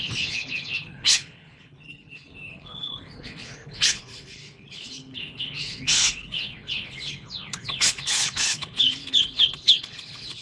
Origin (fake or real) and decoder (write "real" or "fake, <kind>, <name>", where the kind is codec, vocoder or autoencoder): fake, codec, HILCodec